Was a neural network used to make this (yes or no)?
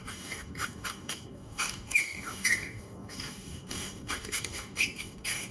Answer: yes